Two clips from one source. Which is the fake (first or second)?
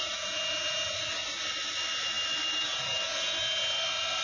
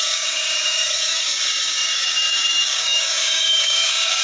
second